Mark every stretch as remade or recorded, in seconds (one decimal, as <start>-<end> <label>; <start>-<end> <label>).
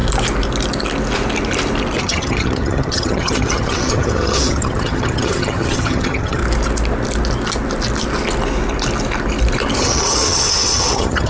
0.0-2.0 recorded; 2.0-6.4 remade; 6.4-9.8 recorded; 9.8-11.3 remade